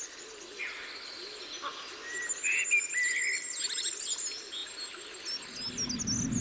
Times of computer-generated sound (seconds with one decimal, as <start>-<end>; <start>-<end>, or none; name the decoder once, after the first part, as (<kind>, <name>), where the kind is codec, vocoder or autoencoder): none